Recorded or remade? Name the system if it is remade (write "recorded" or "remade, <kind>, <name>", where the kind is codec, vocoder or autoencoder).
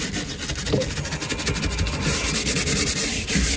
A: recorded